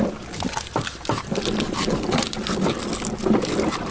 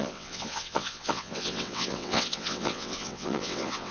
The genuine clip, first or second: first